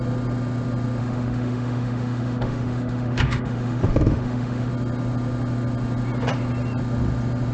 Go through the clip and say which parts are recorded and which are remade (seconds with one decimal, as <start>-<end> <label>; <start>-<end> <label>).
0.0-1.0 recorded; 1.0-4.7 remade; 4.7-7.5 recorded